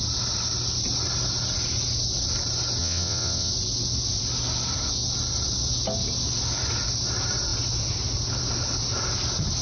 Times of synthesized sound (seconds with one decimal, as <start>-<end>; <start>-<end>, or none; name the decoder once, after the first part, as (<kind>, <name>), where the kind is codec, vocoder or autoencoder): 2.8-3.5 (vocoder, WaveNeXt)